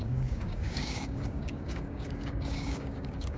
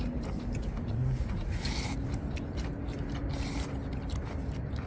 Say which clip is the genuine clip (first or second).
second